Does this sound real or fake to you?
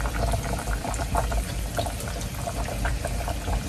fake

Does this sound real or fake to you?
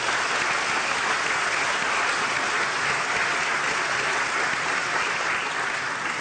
real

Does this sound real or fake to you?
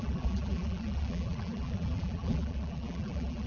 fake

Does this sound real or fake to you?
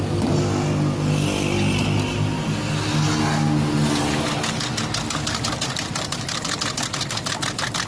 real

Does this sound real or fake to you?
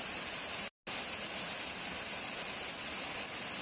real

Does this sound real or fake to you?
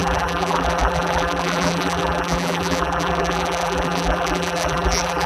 fake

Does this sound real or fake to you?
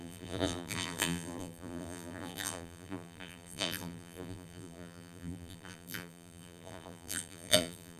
fake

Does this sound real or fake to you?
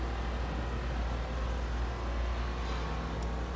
real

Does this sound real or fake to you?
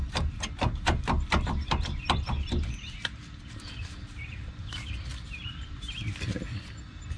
fake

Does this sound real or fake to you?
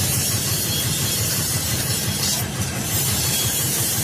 fake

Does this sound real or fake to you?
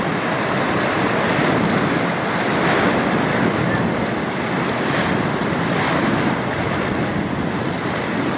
real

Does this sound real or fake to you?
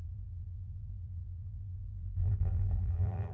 fake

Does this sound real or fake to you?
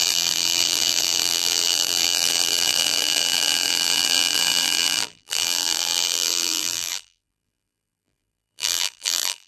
fake